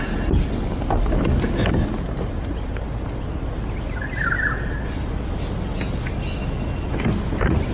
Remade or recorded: recorded